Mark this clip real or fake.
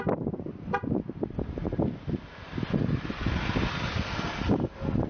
real